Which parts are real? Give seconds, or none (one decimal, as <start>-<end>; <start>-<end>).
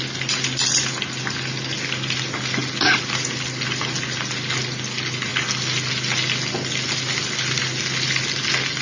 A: 0.0-8.8